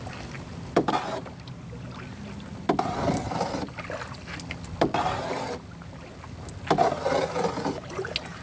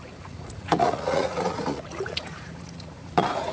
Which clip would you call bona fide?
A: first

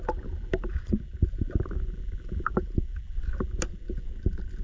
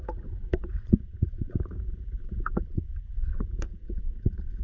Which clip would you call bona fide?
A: first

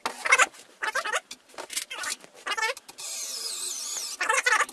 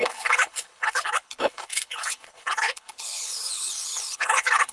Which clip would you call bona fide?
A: first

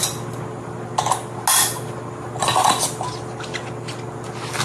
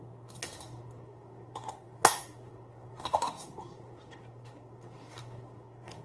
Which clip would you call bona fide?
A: first